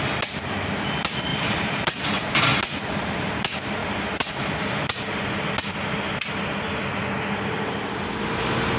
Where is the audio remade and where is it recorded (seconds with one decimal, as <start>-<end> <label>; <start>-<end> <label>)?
0.0-1.3 recorded; 1.3-2.2 remade; 2.2-3.8 recorded; 3.8-4.7 remade; 4.7-8.8 recorded